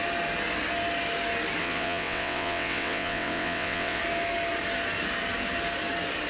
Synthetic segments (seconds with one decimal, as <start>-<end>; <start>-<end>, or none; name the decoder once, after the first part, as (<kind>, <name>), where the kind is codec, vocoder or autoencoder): 1.6-4.0 (vocoder, WaveNeXt)